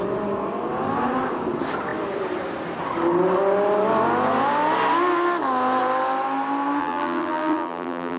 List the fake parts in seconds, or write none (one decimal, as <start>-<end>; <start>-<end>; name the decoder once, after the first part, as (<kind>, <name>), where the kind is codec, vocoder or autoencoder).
6.8-8.2 (vocoder, BigVGAN v2)